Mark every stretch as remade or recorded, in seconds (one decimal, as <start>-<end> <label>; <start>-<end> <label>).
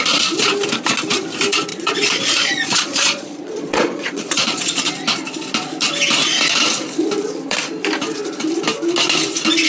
0.0-1.7 recorded; 1.7-4.9 remade; 4.9-9.7 recorded